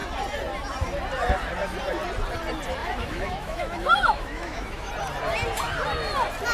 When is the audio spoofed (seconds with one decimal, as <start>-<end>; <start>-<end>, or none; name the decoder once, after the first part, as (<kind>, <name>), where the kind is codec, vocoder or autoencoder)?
2.8-4.9 (autoencoder, DAC-VAE)